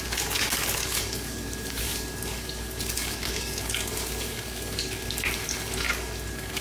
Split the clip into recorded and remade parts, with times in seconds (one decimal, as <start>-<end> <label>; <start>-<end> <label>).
0.0-6.6 remade